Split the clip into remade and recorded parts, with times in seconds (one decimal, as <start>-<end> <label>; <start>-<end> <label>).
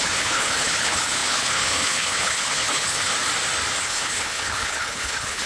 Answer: 0.0-3.1 remade; 3.1-3.8 recorded; 3.8-5.5 remade